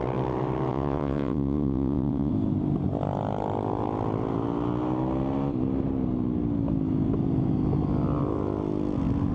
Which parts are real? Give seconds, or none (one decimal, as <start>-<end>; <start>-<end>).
0.0-0.7; 2.3-9.3

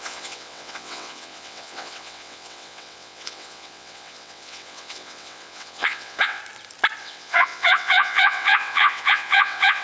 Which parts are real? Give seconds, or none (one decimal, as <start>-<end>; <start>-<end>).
6.4-7.0